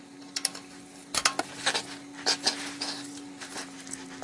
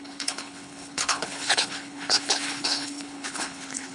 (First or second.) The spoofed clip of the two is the second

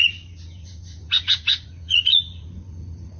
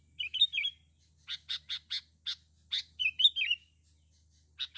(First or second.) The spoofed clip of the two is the first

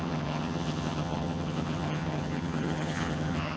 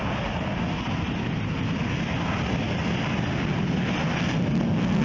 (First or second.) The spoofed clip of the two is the first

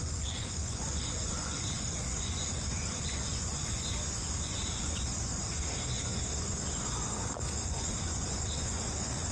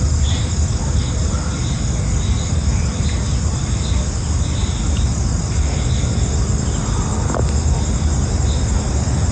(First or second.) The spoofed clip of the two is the first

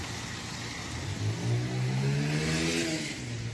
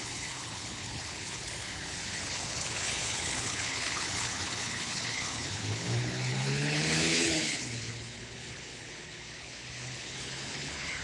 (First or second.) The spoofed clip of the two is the second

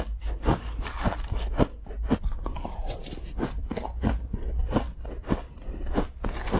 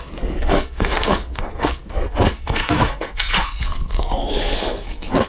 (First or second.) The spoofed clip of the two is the second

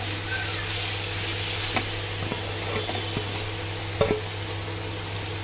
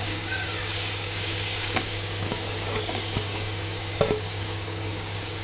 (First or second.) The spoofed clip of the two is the second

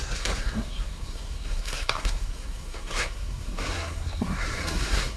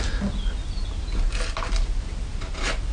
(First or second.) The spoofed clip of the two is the first